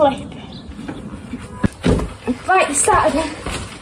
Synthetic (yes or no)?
no